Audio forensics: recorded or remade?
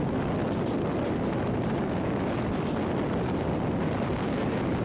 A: recorded